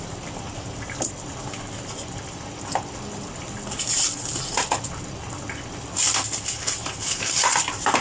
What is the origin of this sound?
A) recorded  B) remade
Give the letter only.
A